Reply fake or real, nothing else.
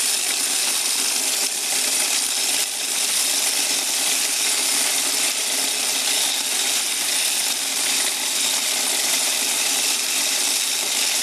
real